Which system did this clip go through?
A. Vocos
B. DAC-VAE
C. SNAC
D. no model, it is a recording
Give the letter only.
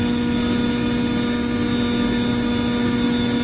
D